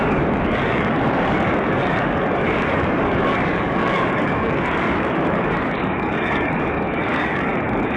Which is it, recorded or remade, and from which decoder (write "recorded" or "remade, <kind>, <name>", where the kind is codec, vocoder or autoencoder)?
remade, codec, DAC